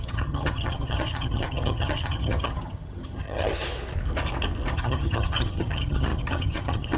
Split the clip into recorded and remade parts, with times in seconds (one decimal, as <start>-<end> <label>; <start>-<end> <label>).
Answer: 0.0-3.5 remade; 3.5-4.7 recorded; 4.7-7.0 remade